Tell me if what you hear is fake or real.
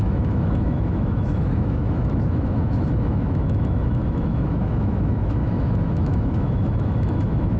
fake